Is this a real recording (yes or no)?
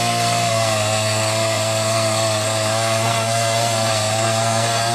no